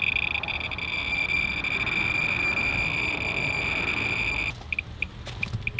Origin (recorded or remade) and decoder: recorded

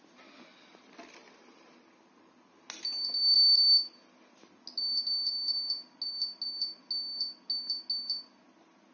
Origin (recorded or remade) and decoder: recorded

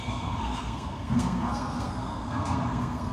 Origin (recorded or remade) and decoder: remade, codec, SNAC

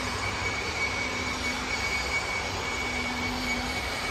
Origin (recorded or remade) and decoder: remade, vocoder, BigVGAN v2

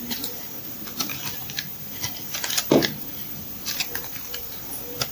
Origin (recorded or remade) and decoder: recorded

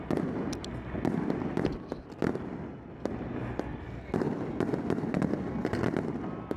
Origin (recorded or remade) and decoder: recorded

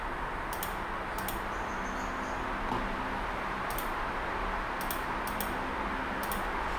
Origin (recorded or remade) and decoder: recorded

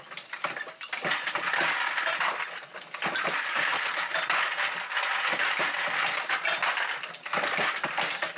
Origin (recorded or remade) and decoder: recorded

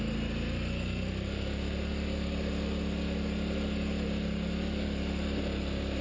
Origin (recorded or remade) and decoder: recorded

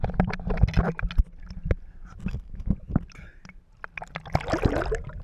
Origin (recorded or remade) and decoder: recorded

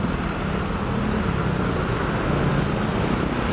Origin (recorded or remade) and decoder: recorded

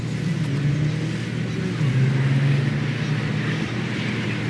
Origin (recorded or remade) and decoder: recorded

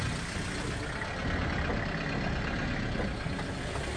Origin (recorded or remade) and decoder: recorded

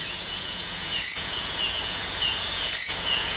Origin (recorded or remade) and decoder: remade, vocoder, Vocos